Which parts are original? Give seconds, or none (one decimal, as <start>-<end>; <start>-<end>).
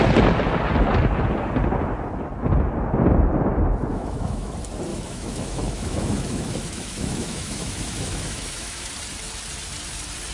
0.0-3.9; 4.5-4.9; 8.9-10.3